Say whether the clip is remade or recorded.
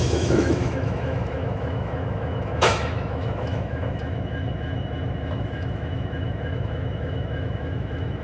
remade